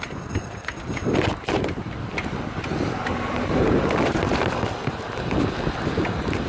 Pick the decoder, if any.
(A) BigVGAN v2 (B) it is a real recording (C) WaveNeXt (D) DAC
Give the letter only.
B